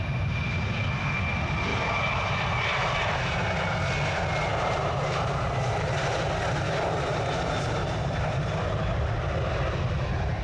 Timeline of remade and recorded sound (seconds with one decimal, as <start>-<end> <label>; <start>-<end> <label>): 0.0-1.7 recorded; 1.7-3.2 remade; 3.2-4.5 recorded; 4.5-9.2 remade; 9.2-10.4 recorded

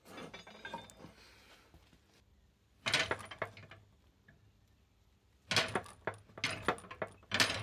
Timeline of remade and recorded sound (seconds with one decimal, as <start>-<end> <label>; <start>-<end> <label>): 0.0-7.6 recorded

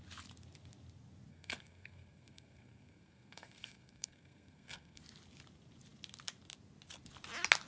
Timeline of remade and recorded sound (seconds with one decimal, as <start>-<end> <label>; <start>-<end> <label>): 0.0-1.3 recorded; 1.3-5.0 remade; 5.0-7.7 recorded

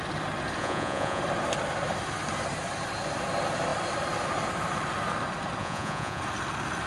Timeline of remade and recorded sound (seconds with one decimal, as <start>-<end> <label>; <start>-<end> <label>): 0.0-0.6 recorded; 0.6-1.2 remade; 1.2-5.6 recorded; 5.6-6.2 remade; 6.2-6.9 recorded

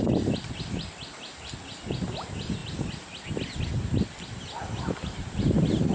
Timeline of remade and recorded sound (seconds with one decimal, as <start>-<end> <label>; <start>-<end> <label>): 0.0-2.6 recorded; 2.6-3.6 remade; 3.6-5.9 recorded

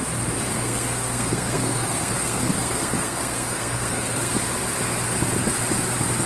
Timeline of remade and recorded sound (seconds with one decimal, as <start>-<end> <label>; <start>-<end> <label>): 0.0-0.5 recorded; 0.5-4.3 remade; 4.3-6.3 recorded

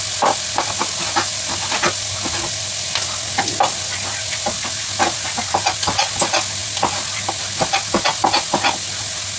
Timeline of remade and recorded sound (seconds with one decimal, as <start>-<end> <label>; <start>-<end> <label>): 0.0-9.4 recorded

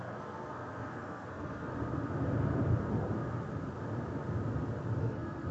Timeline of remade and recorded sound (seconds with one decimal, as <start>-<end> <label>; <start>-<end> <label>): 0.0-1.7 remade; 1.7-5.0 recorded; 5.0-5.5 remade